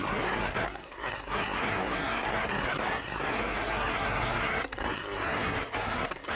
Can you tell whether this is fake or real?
fake